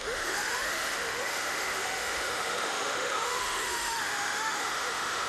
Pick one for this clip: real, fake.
fake